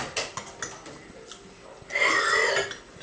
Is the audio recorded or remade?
recorded